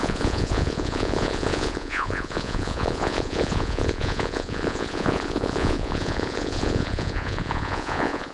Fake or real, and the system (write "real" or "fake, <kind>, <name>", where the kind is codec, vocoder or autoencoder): fake, vocoder, Vocos